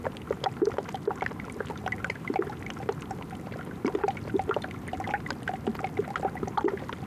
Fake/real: real